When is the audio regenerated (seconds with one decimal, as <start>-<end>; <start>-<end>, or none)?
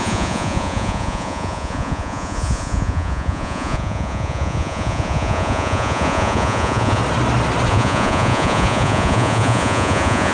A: 0.0-7.0; 7.7-10.3